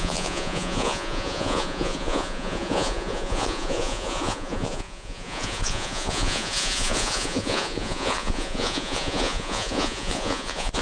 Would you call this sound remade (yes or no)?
yes